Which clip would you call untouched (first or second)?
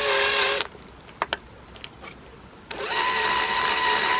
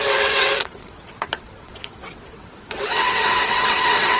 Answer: first